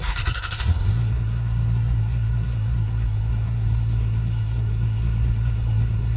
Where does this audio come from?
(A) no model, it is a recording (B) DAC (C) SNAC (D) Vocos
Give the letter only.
C